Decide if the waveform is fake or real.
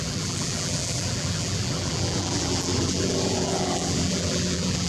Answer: fake